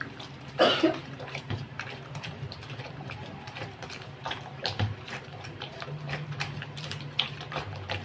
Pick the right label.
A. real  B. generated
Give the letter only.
B